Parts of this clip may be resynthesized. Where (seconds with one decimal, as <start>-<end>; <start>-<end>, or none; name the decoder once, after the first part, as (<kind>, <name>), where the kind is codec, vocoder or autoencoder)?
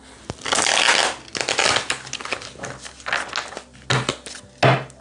none